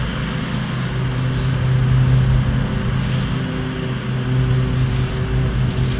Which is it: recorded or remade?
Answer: recorded